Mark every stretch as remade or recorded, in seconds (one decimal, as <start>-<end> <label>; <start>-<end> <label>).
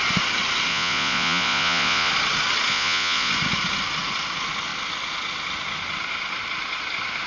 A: 0.0-0.7 recorded; 0.7-2.1 remade; 2.1-2.7 recorded; 2.7-3.3 remade; 3.3-7.3 recorded